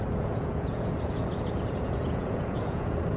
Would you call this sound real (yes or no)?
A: no